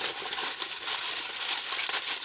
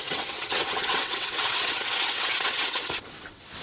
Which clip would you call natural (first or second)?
first